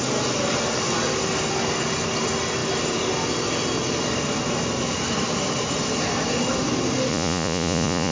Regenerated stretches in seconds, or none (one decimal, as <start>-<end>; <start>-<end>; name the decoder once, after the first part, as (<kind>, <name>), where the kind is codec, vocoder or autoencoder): 7.1-8.1 (vocoder, Vocos)